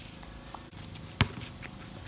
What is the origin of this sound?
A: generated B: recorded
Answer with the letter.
B